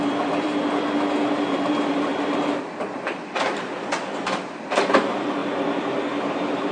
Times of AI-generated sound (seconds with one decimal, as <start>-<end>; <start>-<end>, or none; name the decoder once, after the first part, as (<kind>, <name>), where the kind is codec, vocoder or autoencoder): 0.0-0.5 (vocoder, BigVGAN v2); 1.3-5.4; 6.3-6.7